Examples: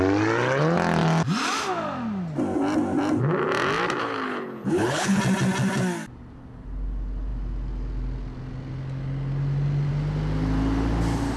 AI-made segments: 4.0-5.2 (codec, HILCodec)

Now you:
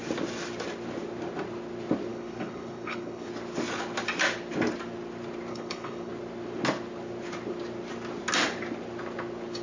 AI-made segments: 2.1-3.3 (codec, HILCodec); 5.5-6.1

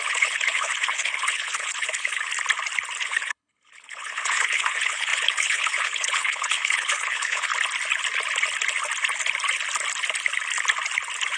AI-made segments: 0.0-2.3 (codec, HILCodec); 3.0-7.5

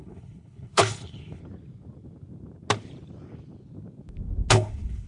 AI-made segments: 0.0-1.4 (codec, HILCodec); 4.5-5.1

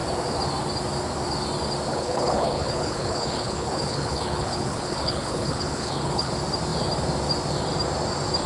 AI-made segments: 1.9-6.3 (codec, HILCodec)

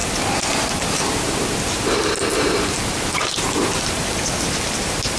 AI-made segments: none